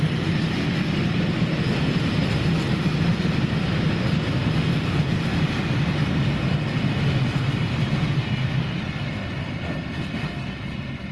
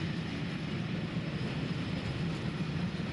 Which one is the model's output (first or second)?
second